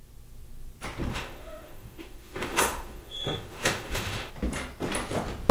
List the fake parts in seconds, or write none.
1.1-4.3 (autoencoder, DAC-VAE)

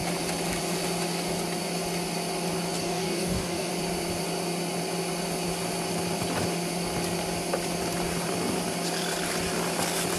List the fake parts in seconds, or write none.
2.8-3.7 (codec, DAC)

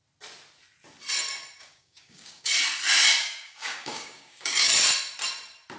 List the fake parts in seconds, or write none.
1.6-2.5 (codec, DAC); 3.2-4.7

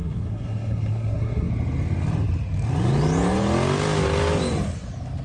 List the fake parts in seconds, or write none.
0.0-1.5 (codec, SNAC)

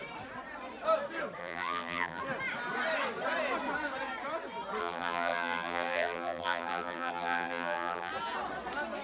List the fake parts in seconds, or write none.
1.4-2.2 (vocoder, BigVGAN v2); 4.8-8.1